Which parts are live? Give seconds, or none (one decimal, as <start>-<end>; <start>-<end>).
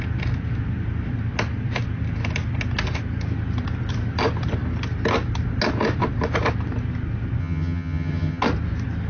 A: 0.0-7.4; 8.4-9.1